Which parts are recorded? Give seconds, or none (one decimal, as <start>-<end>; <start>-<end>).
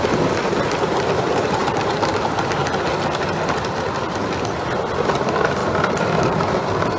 0.0-5.6; 6.6-7.0